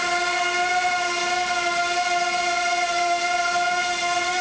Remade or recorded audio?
recorded